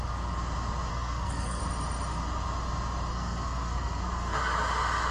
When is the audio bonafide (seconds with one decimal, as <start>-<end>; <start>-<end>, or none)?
0.0-0.9; 1.6-3.1; 4.4-5.1